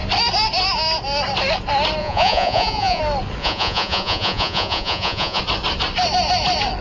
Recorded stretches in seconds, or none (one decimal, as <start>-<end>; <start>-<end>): 0.0-2.0; 3.0-3.4; 5.4-6.8